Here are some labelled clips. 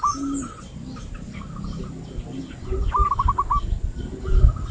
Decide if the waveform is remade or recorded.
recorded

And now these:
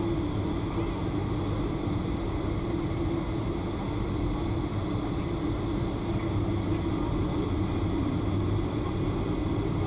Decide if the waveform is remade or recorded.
recorded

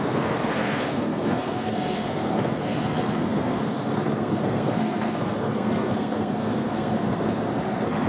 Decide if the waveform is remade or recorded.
remade